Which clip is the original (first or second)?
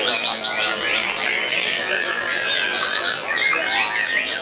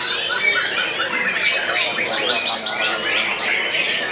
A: second